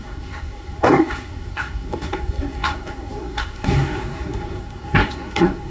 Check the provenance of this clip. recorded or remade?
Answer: remade